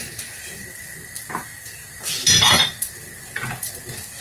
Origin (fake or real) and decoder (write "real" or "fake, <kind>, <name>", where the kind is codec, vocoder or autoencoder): real